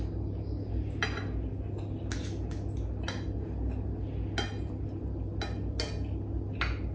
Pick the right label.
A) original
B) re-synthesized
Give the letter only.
A